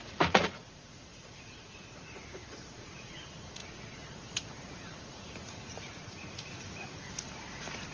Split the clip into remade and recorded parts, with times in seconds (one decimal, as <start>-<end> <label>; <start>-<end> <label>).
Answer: 0.0-7.9 remade